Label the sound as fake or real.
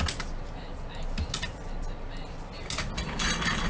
real